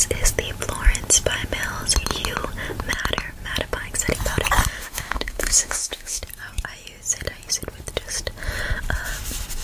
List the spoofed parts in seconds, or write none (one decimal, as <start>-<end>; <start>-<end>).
4.8-6.2